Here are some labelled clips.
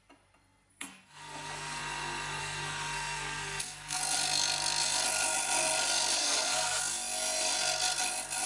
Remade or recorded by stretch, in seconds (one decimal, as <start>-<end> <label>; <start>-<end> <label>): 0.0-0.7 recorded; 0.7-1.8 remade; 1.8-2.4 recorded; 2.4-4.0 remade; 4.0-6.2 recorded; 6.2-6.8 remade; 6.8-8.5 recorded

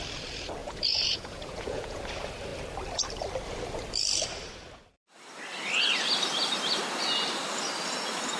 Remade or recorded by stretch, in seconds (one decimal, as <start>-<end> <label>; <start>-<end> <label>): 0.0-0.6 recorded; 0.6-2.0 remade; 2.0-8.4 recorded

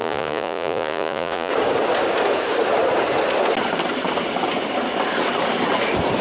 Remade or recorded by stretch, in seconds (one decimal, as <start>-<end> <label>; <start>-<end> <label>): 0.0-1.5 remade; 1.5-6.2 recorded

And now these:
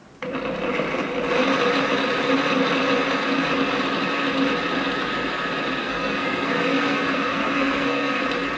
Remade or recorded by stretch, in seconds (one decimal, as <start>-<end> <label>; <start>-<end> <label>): 0.0-5.8 recorded; 5.8-8.2 remade; 8.2-8.6 recorded

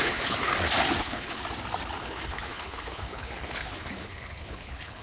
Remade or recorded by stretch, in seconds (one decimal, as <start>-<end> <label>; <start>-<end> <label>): 0.0-0.5 remade; 0.5-1.0 recorded; 1.0-1.4 remade; 1.4-2.0 recorded; 2.0-5.0 remade

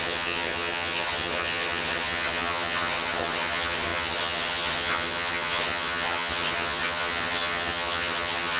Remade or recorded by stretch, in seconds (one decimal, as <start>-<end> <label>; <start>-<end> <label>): 0.0-8.6 remade